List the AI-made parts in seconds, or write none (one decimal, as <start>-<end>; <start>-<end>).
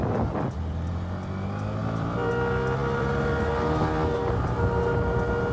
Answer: 1.8-2.3; 2.8-3.5